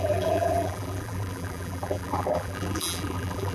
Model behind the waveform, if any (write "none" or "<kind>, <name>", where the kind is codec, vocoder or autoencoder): vocoder, BigVGAN v2